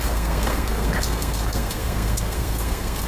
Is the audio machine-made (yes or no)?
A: yes